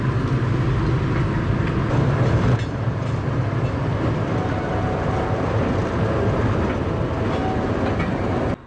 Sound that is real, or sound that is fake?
real